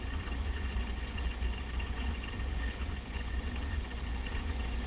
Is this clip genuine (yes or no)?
no